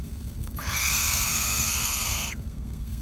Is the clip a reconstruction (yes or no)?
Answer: yes